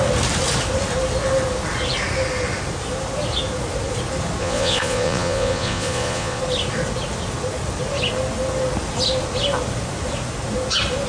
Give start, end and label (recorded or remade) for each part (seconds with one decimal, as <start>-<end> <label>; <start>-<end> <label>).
0.0-4.4 recorded; 4.4-6.4 remade; 6.4-11.1 recorded